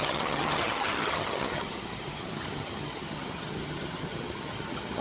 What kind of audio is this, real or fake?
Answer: fake